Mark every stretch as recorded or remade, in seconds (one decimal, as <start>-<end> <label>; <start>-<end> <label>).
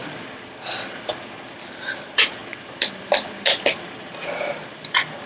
0.0-1.5 recorded; 1.5-2.4 remade; 2.4-4.0 recorded; 4.0-5.3 remade